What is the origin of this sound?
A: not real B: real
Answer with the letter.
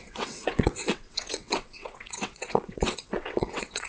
A